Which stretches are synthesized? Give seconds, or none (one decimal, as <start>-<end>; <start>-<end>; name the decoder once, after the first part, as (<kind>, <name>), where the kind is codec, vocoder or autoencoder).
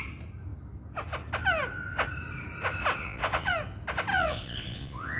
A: 3.0-3.5 (vocoder, Vocos); 4.1-5.2